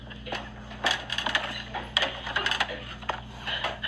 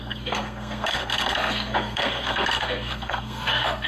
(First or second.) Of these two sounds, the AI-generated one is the second